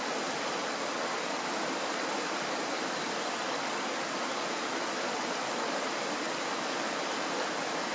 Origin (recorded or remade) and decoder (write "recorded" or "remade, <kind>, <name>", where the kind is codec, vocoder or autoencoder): recorded